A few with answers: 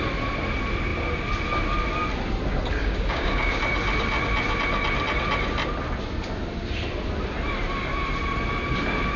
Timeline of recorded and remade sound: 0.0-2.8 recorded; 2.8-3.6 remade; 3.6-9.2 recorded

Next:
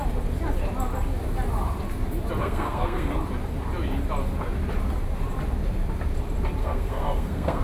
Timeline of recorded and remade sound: 0.0-2.4 recorded; 2.4-3.1 remade; 3.1-6.6 recorded; 6.6-7.6 remade

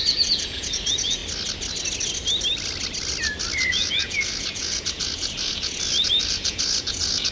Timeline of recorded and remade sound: 0.0-1.2 remade; 1.2-3.7 recorded; 3.7-7.3 remade